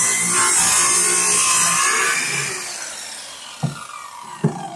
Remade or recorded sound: recorded